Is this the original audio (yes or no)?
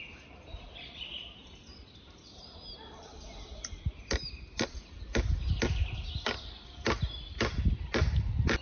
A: yes